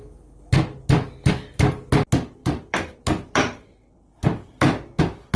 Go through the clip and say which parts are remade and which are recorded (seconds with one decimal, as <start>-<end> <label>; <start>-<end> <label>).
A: 0.0-2.4 recorded; 2.4-5.0 remade; 5.0-5.4 recorded